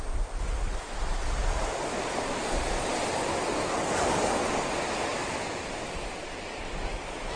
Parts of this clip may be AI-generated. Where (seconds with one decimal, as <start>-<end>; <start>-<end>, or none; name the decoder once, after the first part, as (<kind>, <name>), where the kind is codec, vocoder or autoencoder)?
3.6-4.6 (codec, DAC)